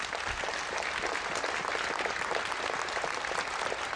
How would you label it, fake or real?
real